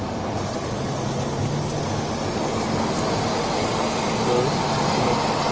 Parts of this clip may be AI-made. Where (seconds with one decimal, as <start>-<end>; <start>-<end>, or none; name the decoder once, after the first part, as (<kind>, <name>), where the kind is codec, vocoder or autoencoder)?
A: none